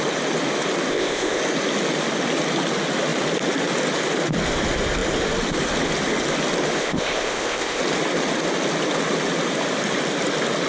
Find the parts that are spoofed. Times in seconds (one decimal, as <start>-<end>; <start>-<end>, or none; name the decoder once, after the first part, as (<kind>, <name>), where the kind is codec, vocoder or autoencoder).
0.9-1.4 (codec, ZipCodec); 6.8-7.8